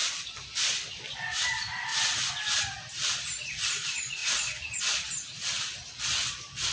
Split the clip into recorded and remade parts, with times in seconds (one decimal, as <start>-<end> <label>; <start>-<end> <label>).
0.0-1.9 remade; 1.9-2.6 recorded; 2.6-4.2 remade; 4.2-4.8 recorded; 4.8-6.7 remade